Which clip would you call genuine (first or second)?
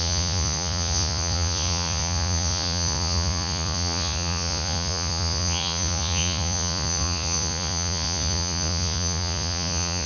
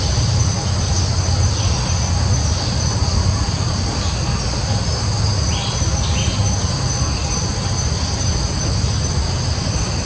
second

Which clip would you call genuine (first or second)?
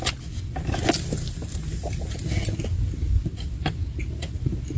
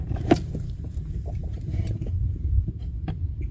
first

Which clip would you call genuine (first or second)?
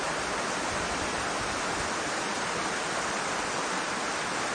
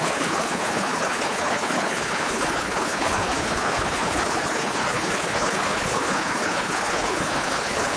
first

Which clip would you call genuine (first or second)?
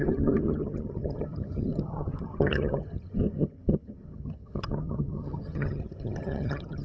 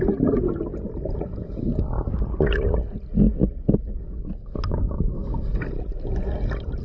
second